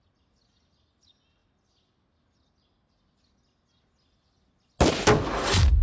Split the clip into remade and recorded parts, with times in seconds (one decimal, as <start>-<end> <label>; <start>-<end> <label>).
0.0-5.8 recorded